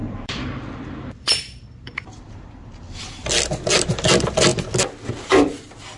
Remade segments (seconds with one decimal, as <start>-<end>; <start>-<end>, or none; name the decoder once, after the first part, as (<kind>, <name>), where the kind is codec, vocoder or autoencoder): 0.0-4.5 (vocoder, BigVGAN v2); 5.1-6.0